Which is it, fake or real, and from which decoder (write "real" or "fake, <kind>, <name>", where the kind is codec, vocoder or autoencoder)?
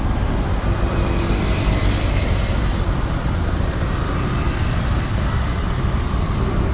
real